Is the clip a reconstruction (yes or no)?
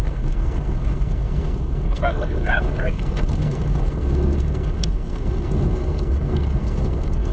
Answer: yes